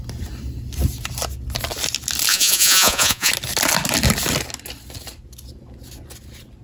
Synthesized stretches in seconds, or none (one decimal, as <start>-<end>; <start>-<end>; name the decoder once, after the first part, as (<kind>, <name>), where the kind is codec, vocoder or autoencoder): 2.3-3.3 (vocoder, Vocos)

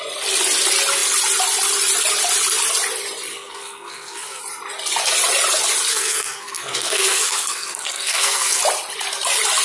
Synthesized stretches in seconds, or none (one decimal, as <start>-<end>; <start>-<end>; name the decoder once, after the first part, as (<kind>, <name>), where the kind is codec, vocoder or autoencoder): 3.3-4.4 (codec, SNAC); 5.9-8.6

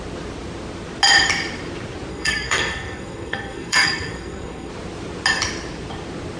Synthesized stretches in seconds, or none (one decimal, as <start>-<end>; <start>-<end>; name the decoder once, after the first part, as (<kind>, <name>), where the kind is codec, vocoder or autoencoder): 2.1-4.7 (codec, SNAC)

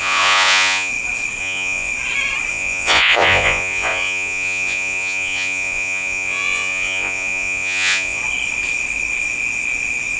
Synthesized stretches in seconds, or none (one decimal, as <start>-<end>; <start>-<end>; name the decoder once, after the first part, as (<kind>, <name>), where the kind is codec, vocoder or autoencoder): 0.0-0.9 (vocoder, Vocos); 1.4-1.9; 2.5-8.2

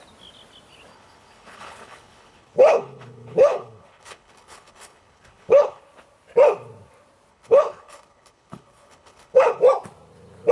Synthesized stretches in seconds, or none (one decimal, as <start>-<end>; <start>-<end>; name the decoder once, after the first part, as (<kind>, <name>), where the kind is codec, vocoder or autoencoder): 0.9-5.8 (codec, HILCodec); 7.3-9.6

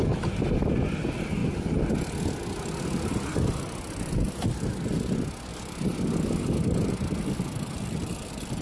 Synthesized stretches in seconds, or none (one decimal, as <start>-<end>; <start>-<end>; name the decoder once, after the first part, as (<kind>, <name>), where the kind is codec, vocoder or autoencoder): none

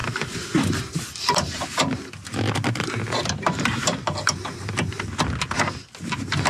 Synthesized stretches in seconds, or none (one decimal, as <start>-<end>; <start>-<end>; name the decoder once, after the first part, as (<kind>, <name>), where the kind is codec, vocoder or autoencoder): none

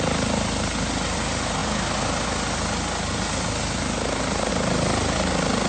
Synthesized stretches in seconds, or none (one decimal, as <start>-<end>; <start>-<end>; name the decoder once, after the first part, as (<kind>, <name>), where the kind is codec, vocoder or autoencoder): none